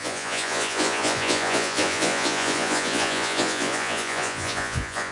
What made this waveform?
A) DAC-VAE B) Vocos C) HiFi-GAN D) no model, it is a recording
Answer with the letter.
B